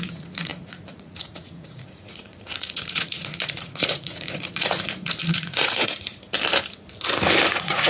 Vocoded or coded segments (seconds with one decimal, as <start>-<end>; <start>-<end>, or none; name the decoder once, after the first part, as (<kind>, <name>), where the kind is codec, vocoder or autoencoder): 0.0-6.1 (vocoder, Vocos); 7.5-7.9